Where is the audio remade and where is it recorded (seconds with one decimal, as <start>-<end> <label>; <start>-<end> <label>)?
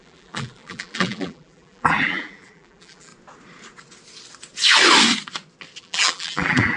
0.0-3.1 remade; 3.1-5.8 recorded; 5.8-6.8 remade